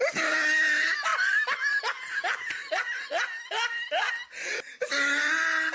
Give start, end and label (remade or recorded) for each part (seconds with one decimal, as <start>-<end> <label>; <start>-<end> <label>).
0.0-1.1 recorded; 1.1-4.1 remade; 4.1-5.7 recorded

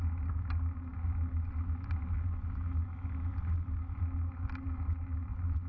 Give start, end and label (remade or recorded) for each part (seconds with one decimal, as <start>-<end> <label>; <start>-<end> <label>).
0.0-5.7 recorded

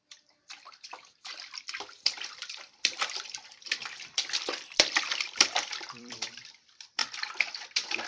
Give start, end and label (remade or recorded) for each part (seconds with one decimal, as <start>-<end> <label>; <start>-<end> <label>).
0.0-7.0 remade; 7.0-7.6 recorded; 7.6-8.1 remade

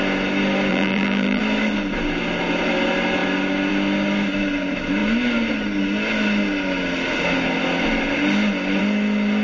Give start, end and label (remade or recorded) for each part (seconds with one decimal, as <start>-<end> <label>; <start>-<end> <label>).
0.0-0.7 recorded; 0.7-1.4 remade; 1.4-9.4 recorded

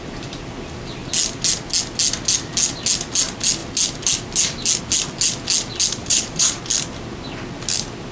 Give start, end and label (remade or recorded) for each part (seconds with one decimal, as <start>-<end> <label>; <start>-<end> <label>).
0.0-6.0 recorded; 6.0-6.6 remade; 6.6-8.1 recorded